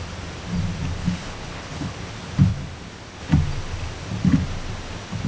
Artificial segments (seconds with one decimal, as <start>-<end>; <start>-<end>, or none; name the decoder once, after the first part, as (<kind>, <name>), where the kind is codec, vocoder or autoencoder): 1.0-1.9 (codec, HILCodec)

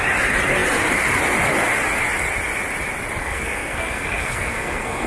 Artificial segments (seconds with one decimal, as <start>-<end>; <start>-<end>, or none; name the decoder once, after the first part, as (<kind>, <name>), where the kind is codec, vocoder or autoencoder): 3.2-5.1 (codec, SNAC)

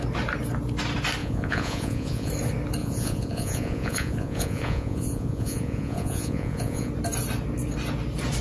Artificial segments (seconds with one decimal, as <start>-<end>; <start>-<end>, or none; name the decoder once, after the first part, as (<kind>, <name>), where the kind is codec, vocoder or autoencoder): 1.2-2.3 (vocoder, Vocos); 2.8-6.9